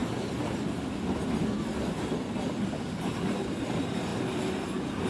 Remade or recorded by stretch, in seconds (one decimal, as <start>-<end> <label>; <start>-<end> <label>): 0.0-5.1 recorded